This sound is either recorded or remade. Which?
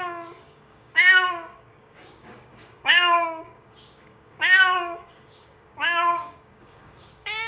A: remade